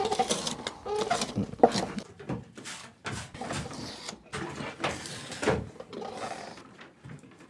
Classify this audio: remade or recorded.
recorded